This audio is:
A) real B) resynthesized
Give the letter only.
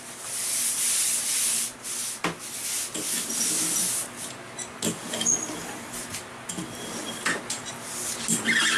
A